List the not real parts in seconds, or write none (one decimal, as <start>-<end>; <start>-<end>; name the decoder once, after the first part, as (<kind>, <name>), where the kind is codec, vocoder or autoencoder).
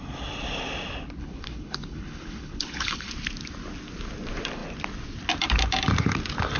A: 1.2-3.1 (codec, HILCodec)